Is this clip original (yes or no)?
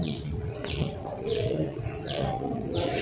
no